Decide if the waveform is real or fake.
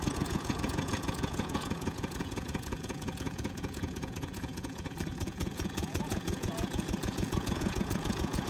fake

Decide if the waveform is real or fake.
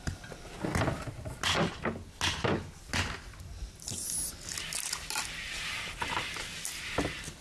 real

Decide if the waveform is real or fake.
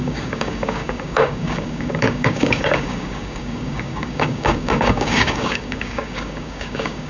fake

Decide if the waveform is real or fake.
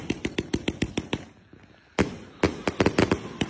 real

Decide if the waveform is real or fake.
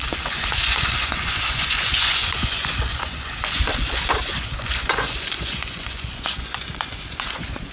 fake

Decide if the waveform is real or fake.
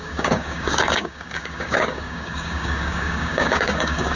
fake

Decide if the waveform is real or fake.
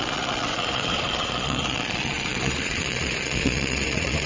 fake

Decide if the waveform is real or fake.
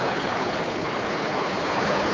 fake